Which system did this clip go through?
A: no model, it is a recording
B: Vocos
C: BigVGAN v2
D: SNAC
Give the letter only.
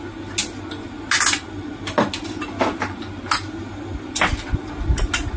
A